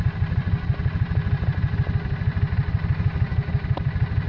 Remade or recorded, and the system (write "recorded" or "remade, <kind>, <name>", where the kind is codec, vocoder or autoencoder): remade, vocoder, BigVGAN v2